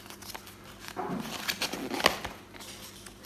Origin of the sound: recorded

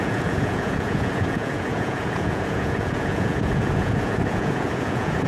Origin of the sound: remade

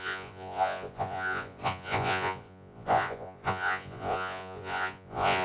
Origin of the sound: remade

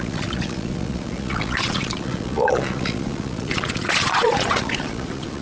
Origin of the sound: remade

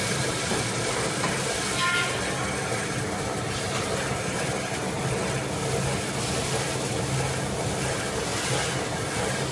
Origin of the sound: recorded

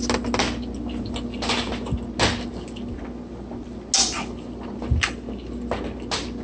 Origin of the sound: recorded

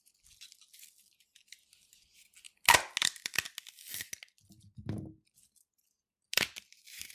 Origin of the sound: recorded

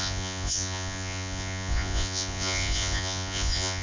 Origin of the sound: remade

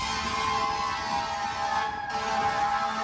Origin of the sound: recorded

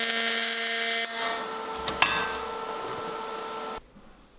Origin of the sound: recorded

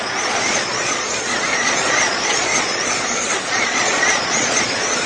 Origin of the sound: remade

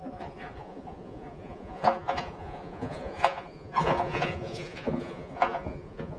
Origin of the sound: remade